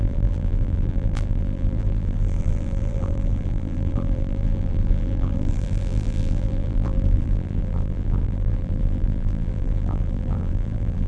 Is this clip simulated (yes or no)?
yes